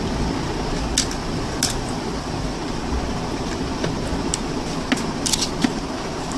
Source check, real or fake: real